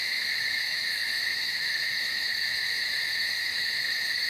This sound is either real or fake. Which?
fake